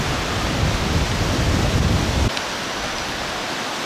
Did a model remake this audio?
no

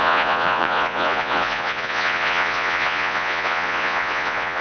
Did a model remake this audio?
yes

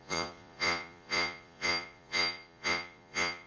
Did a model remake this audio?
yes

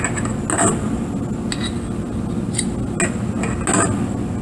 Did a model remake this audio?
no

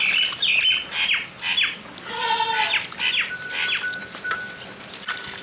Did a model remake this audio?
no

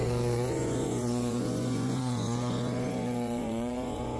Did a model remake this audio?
yes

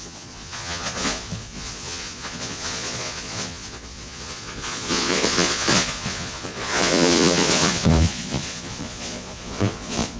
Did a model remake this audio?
yes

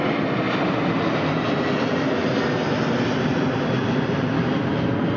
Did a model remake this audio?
no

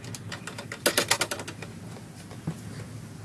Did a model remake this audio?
no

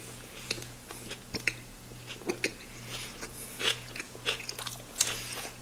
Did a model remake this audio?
yes